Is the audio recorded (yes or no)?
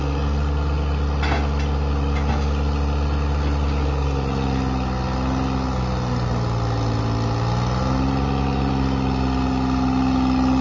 yes